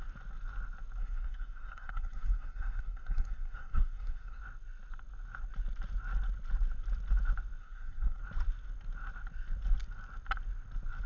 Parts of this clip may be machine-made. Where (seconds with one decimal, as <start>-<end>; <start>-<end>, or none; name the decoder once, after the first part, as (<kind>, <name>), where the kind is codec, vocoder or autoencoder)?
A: 1.0-4.4 (codec, SNAC); 7.6-8.2